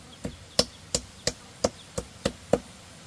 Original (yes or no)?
yes